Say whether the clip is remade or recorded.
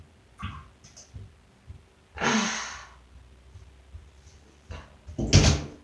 recorded